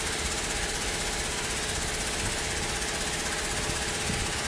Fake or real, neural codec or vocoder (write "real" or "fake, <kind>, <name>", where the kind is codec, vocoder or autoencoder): real